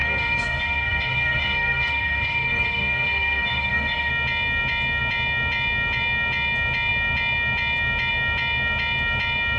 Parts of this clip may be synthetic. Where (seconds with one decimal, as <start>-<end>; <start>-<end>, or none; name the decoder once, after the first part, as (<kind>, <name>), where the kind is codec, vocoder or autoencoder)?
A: 0.0-4.1 (codec, SNAC)